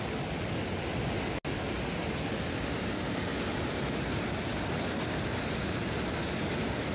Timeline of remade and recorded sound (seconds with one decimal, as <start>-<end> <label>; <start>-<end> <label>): 0.0-6.9 recorded